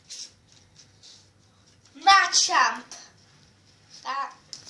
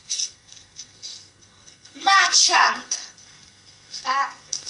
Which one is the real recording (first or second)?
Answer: first